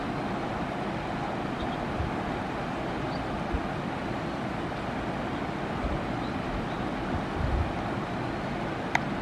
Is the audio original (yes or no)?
yes